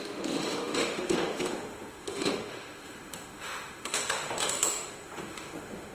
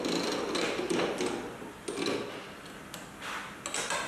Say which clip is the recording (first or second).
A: second